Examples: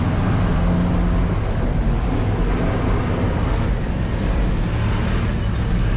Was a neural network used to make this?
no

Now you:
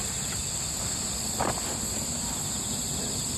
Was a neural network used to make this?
no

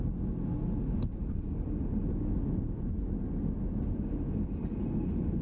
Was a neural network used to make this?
no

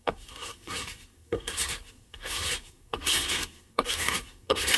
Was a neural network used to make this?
yes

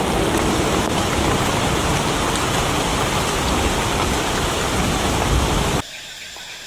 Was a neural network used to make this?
no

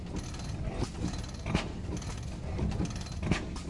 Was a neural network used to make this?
no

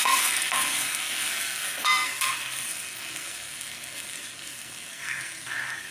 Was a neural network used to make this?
yes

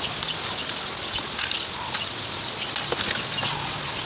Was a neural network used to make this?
no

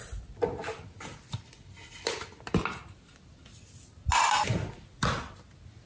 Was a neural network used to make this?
no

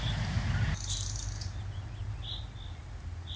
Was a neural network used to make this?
no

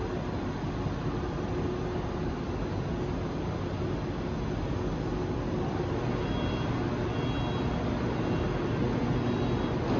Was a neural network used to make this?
no